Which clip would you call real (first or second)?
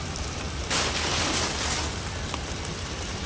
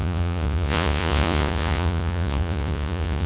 first